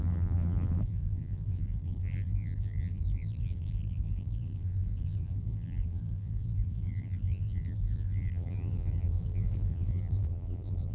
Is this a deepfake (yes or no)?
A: yes